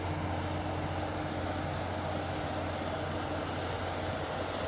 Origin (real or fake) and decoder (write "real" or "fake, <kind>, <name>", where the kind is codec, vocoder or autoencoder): real